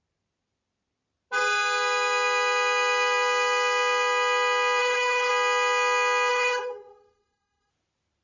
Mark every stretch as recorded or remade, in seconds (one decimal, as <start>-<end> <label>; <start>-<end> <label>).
0.0-4.8 recorded; 4.8-5.3 remade; 5.3-6.3 recorded; 6.3-7.7 remade; 7.7-8.2 recorded